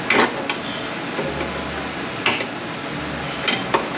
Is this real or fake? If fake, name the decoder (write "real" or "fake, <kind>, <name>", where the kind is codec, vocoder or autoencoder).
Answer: real